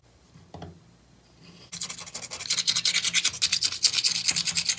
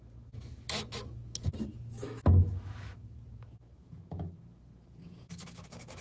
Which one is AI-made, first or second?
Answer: second